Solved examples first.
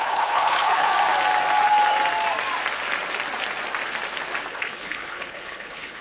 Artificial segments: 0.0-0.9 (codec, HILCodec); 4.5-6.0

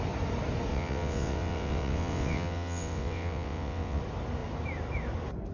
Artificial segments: 0.7-4.0 (vocoder, WaveNeXt)

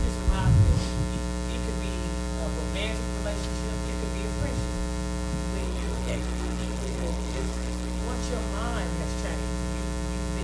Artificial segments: 5.6-8.0 (codec, SNAC)

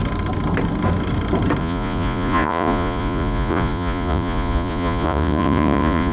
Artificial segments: 1.6-6.1 (vocoder, Vocos)

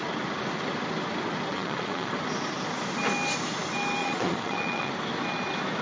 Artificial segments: 1.5-2.1 (vocoder, Vocos); 4.0-4.9

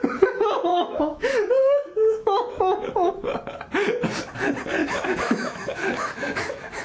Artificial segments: 0.7-3.1 (autoencoder, DAC-VAE); 4.8-6.8